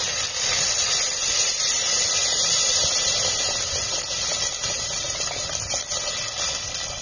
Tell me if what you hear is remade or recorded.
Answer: recorded